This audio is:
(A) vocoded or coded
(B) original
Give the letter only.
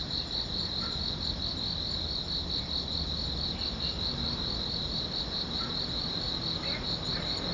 B